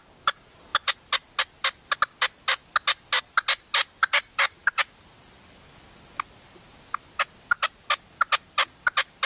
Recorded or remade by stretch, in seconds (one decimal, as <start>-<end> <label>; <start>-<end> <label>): 0.0-9.3 recorded